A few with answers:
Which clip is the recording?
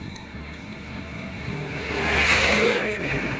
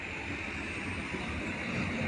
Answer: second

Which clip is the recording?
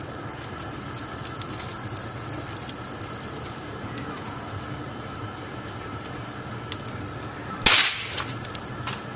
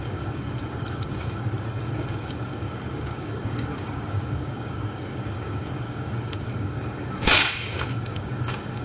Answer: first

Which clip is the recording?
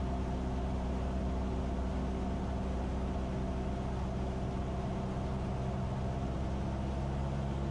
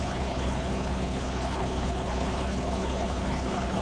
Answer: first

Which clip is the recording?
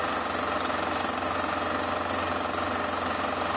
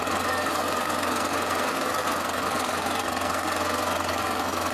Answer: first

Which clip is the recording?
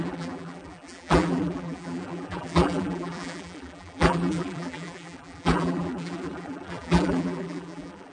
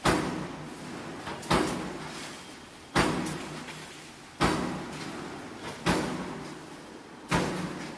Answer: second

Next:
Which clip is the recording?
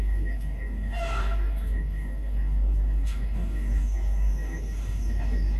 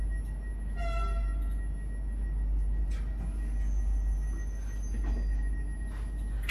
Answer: second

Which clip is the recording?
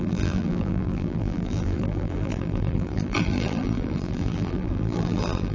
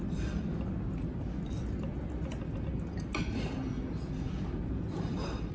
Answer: second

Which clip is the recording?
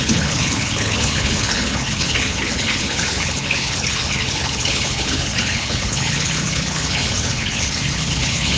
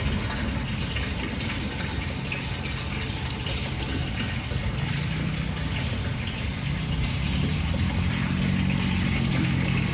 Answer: second